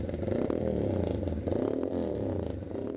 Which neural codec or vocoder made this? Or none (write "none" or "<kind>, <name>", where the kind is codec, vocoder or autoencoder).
none